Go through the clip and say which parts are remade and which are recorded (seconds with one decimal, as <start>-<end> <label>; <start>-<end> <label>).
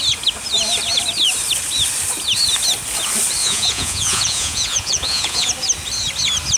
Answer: 0.0-3.4 recorded; 3.4-5.5 remade; 5.5-6.6 recorded